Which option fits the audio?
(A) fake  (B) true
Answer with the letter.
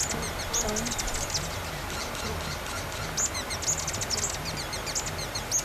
B